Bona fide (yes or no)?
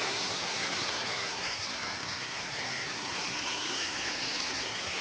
no